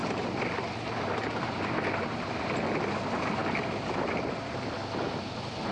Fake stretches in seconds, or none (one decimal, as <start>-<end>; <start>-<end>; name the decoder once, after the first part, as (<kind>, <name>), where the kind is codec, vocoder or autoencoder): none